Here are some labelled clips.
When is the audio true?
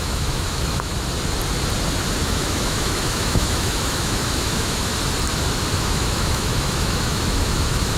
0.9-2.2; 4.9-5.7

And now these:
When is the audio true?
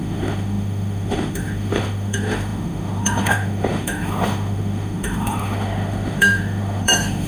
none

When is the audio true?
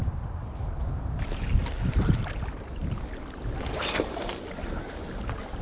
0.0-5.6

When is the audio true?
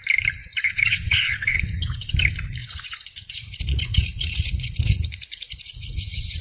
0.0-0.4; 2.1-2.6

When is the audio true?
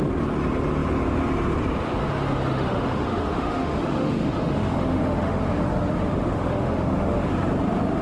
0.0-2.5; 7.3-8.0